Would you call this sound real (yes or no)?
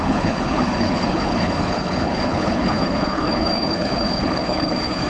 no